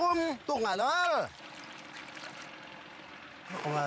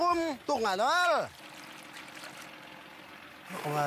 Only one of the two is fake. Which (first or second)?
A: first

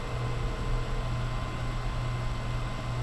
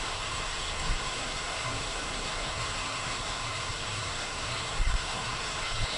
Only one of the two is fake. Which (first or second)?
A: second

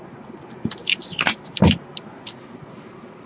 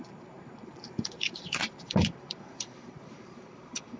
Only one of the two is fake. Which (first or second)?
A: second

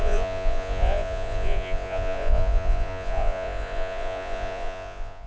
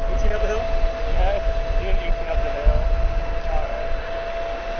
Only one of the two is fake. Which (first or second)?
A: first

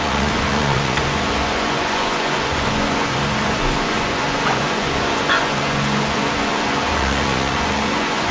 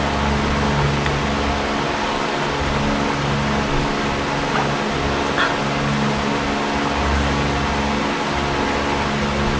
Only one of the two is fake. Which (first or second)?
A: first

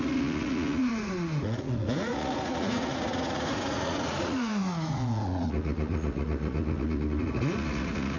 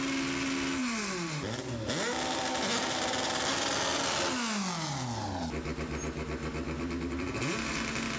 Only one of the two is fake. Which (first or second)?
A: first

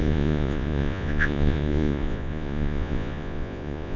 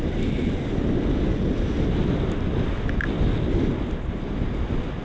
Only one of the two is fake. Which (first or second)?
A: first